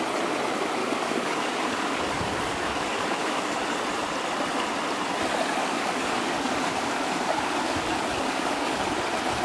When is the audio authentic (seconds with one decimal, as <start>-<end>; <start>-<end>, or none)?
0.0-0.8; 3.5-5.6; 8.8-9.4